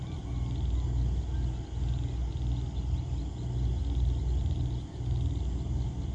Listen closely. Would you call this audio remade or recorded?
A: recorded